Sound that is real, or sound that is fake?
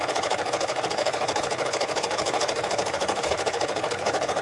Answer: fake